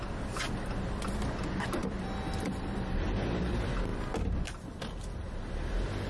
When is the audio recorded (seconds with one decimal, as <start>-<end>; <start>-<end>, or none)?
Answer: 0.0-6.1

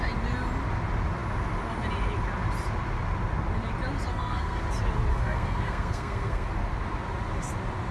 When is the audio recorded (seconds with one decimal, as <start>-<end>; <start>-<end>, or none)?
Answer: 0.0-4.1; 4.6-5.1; 6.5-7.9

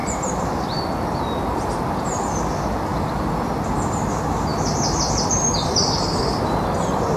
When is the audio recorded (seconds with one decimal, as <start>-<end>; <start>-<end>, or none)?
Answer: 0.8-4.5; 6.2-7.2

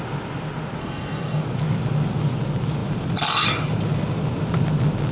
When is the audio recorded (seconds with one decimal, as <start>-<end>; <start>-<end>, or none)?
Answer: 0.0-0.8; 1.4-5.1